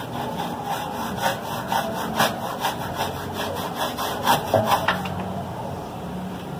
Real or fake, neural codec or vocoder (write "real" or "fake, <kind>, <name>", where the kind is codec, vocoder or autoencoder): real